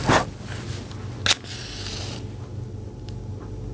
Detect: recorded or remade recorded